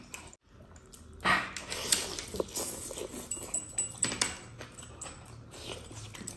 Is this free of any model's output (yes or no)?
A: yes